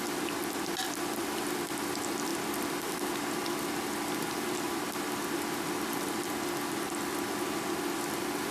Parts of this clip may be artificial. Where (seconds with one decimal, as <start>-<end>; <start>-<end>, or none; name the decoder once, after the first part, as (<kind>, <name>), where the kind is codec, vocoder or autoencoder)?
none